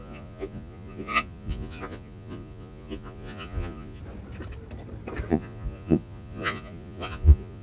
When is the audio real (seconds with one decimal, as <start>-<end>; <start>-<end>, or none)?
4.0-5.3